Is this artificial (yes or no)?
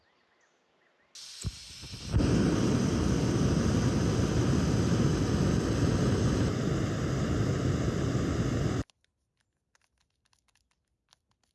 no